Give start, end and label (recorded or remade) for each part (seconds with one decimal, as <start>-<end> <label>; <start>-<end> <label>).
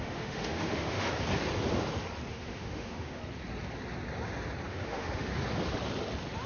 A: 0.0-1.1 remade; 1.1-2.3 recorded; 2.3-3.2 remade; 3.2-4.7 recorded; 4.7-5.3 remade; 5.3-6.5 recorded